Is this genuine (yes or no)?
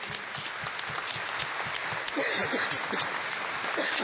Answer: yes